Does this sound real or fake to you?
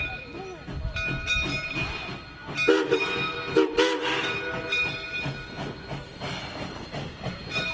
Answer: real